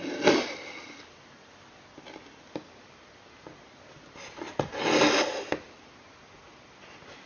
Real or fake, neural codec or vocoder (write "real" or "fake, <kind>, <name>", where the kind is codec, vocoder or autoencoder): real